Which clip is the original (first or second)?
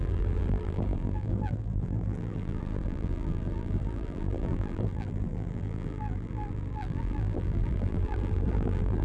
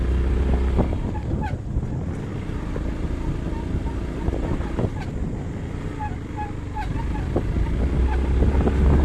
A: second